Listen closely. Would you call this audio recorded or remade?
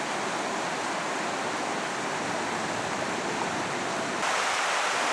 recorded